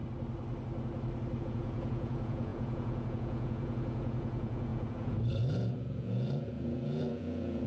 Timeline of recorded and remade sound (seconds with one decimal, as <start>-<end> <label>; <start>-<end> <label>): 0.0-1.4 recorded; 1.4-7.7 remade

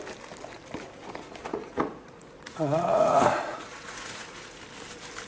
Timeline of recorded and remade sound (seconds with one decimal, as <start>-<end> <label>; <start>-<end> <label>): 0.0-1.4 recorded; 1.4-4.6 remade; 4.6-5.3 recorded

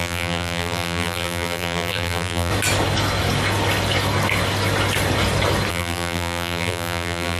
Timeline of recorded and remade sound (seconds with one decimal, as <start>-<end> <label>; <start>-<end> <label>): 0.0-2.5 remade; 2.5-5.7 recorded; 5.7-7.4 remade